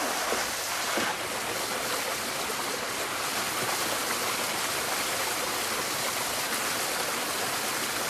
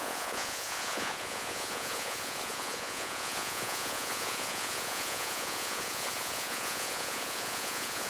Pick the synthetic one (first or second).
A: second